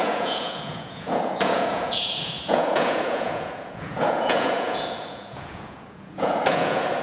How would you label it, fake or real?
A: fake